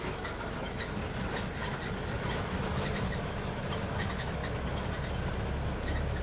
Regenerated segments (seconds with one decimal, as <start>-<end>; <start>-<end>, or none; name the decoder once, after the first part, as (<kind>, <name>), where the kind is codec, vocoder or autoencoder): 0.0-1.0 (autoencoder, DAC-VAE); 2.3-4.4